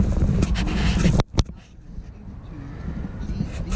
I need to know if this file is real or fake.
real